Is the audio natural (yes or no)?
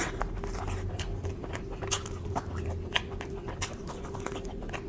yes